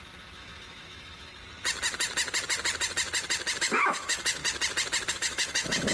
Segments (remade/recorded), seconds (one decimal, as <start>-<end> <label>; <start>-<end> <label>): 0.0-1.3 remade; 1.3-3.6 recorded; 3.6-4.4 remade; 4.4-5.1 recorded; 5.1-5.9 remade